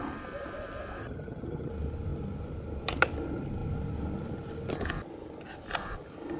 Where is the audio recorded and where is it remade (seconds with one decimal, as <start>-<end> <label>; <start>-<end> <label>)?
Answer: 0.0-1.0 recorded; 1.0-1.7 remade; 1.7-6.4 recorded